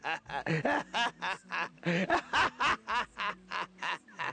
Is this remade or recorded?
recorded